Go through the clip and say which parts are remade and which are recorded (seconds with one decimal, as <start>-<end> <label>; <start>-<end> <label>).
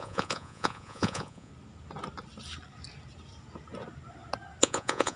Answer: 0.0-1.5 remade; 1.5-4.6 recorded; 4.6-5.2 remade